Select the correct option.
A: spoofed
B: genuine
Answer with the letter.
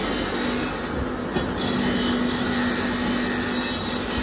B